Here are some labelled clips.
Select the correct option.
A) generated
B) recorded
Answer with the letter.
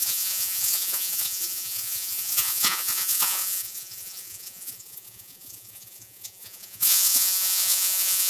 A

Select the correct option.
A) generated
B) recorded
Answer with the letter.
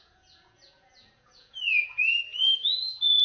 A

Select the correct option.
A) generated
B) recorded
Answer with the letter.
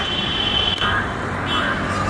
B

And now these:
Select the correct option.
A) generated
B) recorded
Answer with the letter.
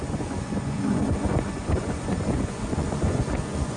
A